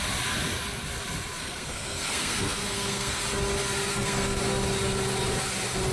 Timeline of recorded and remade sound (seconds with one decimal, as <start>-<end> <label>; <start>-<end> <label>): 0.0-1.4 recorded; 1.4-3.2 remade; 3.2-3.9 recorded; 3.9-4.4 remade; 4.4-5.9 recorded